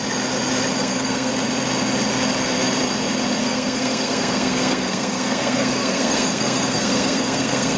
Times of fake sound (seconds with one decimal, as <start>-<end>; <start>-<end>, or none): 0.8-1.3; 3.4-7.8